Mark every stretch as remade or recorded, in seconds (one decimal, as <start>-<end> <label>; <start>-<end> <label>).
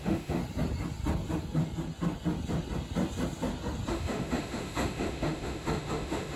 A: 0.0-0.4 remade; 0.4-3.9 recorded; 3.9-6.4 remade